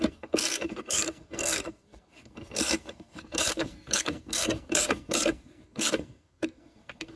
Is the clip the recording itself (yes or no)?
no